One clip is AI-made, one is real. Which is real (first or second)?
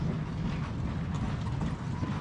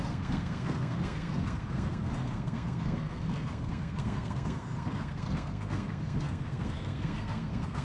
first